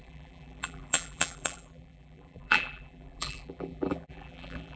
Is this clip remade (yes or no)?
yes